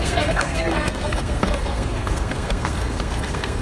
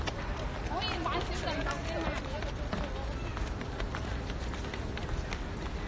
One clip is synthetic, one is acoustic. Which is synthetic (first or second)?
first